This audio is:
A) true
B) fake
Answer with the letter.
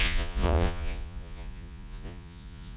B